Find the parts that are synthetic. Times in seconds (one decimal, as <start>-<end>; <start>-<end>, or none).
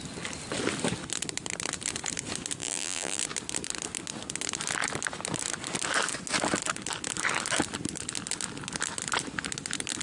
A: 2.6-3.2